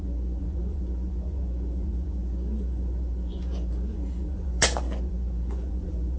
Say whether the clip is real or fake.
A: fake